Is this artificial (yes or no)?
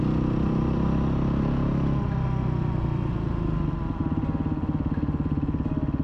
no